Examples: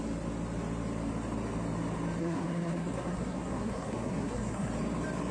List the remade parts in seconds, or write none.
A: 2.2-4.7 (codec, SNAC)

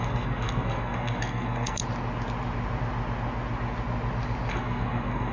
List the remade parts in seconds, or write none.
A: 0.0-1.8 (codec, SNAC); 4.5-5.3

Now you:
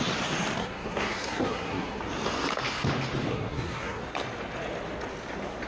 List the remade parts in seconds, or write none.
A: 0.6-2.0 (codec, SNAC); 3.3-4.0

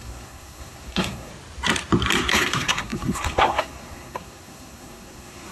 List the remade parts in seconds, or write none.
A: 0.0-1.3 (codec, SNAC); 2.3-5.5

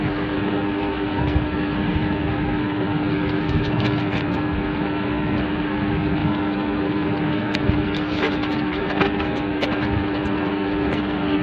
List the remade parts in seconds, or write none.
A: 0.0-11.4 (codec, SNAC)

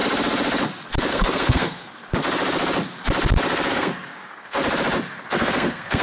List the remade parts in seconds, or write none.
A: 1.1-2.0 (codec, SNAC); 3.7-4.6; 5.3-6.0

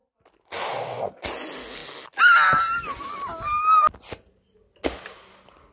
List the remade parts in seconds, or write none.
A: none